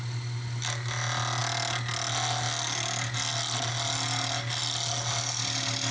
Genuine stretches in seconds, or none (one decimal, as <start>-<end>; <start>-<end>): 0.0-5.9